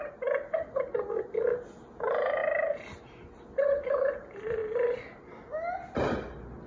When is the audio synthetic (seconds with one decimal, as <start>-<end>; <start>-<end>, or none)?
none